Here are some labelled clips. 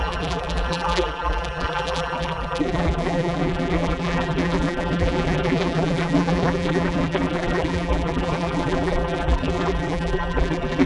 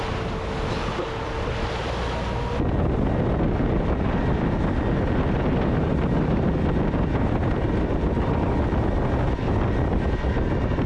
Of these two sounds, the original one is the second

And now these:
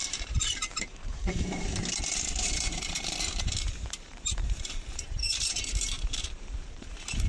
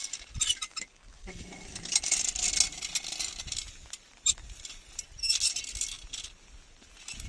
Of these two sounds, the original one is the second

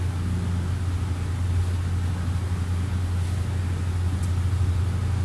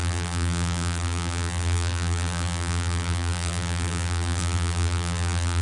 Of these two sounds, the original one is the first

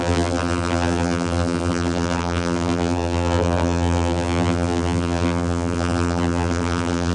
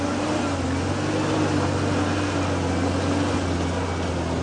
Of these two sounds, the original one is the second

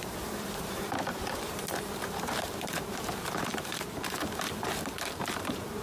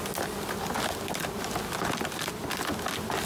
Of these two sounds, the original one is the second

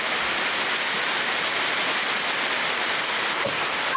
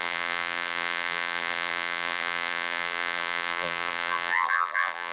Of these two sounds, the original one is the first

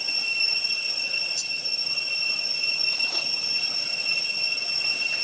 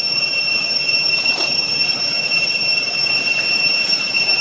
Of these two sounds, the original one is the first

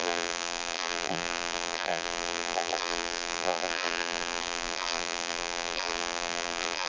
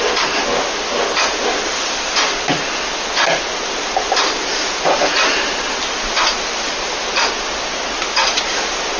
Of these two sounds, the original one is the second